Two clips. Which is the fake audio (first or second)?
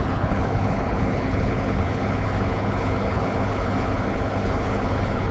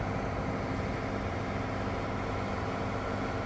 first